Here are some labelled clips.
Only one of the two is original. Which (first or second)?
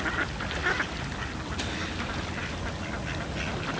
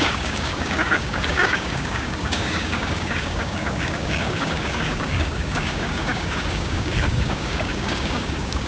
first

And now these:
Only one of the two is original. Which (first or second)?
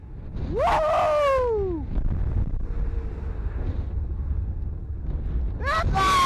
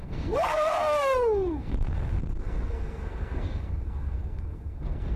first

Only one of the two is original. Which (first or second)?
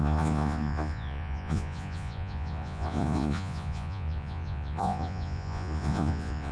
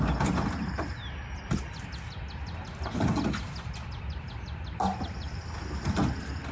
second